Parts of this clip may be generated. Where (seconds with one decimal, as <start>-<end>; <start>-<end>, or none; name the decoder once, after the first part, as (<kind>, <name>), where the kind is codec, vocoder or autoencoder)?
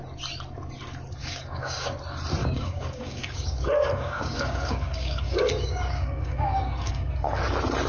1.2-1.9 (codec, DAC); 2.4-7.1